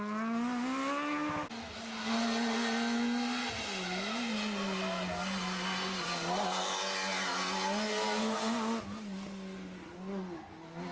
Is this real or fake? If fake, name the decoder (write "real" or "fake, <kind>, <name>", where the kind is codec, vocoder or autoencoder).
real